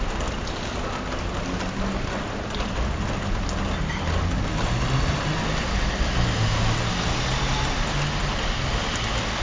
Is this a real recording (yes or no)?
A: yes